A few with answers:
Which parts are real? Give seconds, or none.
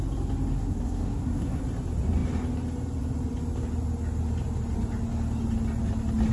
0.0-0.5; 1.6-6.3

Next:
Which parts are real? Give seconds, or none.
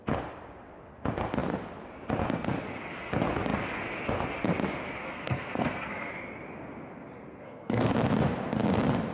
0.0-5.0; 6.1-7.3; 7.9-9.1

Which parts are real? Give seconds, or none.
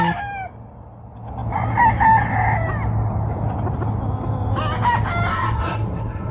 0.0-5.3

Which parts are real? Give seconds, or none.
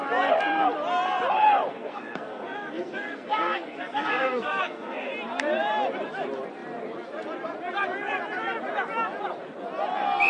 0.0-1.7; 5.1-10.3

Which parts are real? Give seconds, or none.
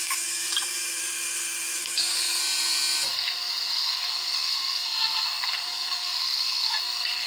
2.4-3.1